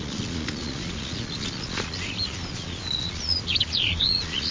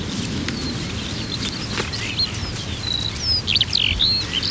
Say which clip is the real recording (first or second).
second